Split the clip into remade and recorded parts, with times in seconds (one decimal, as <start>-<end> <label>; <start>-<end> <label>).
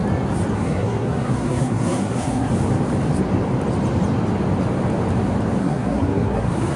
0.0-0.5 recorded; 0.5-2.5 remade; 2.5-5.6 recorded; 5.6-6.8 remade